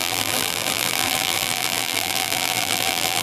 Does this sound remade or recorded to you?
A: remade